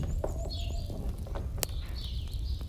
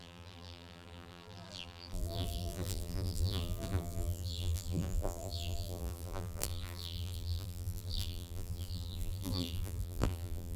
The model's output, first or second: second